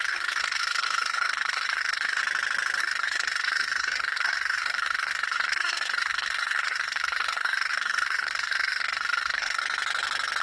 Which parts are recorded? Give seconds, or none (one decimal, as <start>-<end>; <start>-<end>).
2.2-2.8; 9.6-10.4